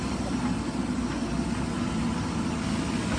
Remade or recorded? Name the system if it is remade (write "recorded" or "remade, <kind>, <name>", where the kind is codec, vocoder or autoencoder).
recorded